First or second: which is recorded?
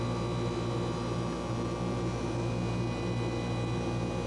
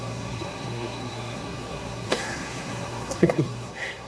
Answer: first